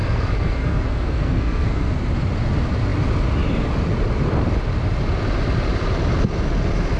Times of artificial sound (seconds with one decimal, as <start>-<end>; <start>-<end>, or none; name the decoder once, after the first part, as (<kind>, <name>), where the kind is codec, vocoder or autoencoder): 0.0-1.9 (codec, SNAC)